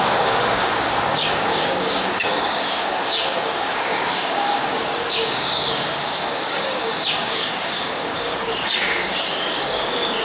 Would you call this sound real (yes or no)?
no